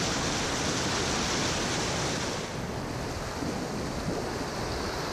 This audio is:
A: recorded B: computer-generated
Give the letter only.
A